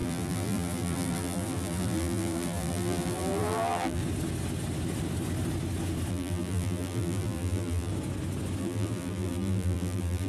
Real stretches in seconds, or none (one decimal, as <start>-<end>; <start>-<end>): 4.0-6.1; 7.9-8.6